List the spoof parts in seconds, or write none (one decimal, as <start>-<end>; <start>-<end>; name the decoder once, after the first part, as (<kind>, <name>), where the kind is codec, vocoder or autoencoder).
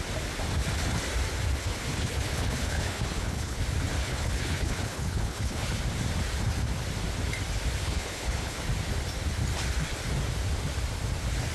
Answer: 1.6-3.6 (codec, HILCodec); 4.0-5.8; 7.8-8.6